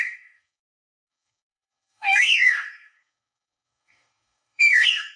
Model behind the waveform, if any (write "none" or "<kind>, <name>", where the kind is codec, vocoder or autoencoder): codec, DAC